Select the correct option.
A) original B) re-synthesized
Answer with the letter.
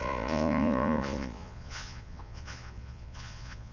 B